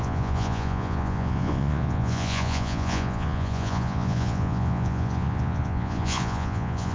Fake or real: fake